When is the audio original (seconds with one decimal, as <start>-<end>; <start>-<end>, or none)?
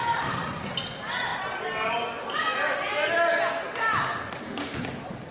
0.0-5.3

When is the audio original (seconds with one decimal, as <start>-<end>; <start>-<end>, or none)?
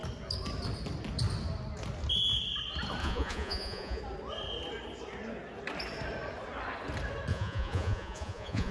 0.0-3.0; 4.0-7.3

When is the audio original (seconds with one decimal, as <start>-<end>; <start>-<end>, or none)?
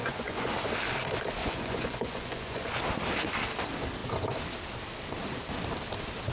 0.5-1.4; 2.7-6.3